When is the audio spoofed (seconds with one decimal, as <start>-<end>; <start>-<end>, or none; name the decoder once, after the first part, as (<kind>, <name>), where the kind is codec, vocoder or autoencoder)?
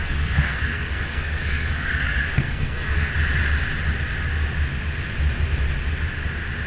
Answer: 0.0-3.1 (codec, SNAC)